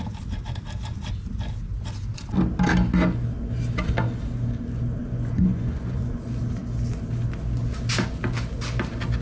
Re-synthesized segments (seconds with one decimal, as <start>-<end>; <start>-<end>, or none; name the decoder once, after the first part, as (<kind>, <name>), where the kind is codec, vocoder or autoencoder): 5.0-6.4 (vocoder, Vocos)